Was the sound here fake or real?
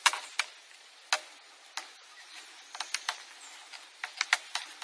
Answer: real